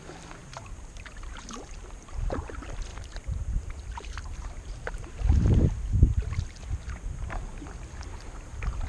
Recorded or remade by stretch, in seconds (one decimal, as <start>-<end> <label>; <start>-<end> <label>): 0.0-0.4 recorded; 0.4-2.4 remade; 2.4-2.9 recorded; 2.9-6.0 remade; 6.0-8.9 recorded